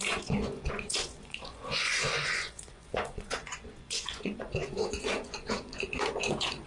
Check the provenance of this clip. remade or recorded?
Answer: remade